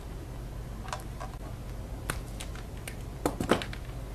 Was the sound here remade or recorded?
recorded